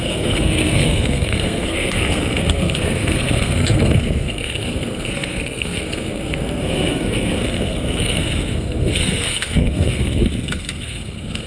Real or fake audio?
fake